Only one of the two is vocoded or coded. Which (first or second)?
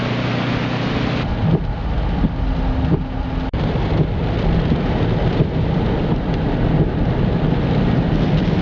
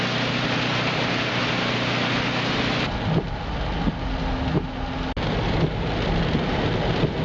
first